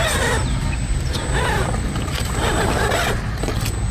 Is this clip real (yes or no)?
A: yes